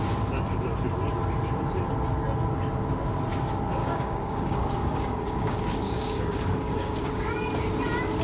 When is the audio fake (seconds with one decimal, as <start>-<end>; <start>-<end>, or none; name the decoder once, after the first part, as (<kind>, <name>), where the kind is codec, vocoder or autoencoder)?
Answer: 3.8-7.5 (codec, DAC)

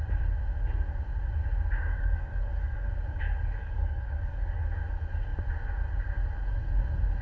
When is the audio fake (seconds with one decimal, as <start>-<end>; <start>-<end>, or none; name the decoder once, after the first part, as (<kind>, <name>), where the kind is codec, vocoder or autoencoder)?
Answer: 1.9-2.9 (codec, DAC); 3.6-4.6

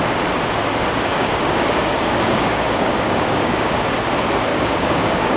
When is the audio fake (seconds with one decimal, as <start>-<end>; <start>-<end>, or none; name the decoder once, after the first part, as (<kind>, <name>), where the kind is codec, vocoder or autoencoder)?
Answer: 1.1-3.7 (codec, DAC); 4.5-5.4

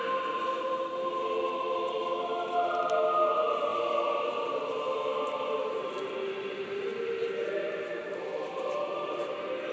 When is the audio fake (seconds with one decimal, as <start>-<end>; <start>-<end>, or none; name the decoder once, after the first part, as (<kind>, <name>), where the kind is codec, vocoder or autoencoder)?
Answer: none

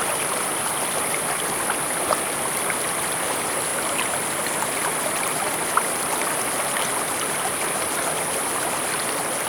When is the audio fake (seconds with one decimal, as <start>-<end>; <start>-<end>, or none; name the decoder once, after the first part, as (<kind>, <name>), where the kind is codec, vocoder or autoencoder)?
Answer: none

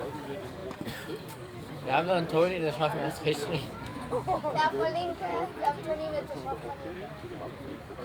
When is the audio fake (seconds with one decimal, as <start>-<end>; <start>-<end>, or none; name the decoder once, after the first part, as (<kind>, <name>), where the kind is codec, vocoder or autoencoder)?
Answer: 0.0-5.3 (codec, DAC); 5.9-8.0

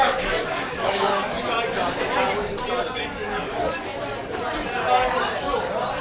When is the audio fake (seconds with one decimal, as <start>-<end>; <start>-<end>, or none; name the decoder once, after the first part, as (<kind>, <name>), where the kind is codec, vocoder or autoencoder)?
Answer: 0.0-1.2 (codec, DAC); 3.0-3.9